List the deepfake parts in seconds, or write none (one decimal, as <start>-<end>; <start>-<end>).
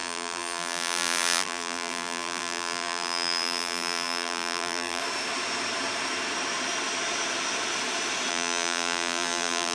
0.0-5.0; 8.3-9.7